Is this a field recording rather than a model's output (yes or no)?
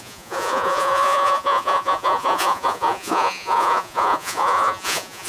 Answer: no